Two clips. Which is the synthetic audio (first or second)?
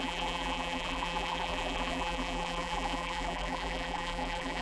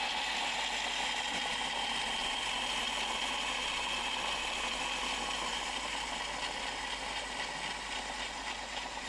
first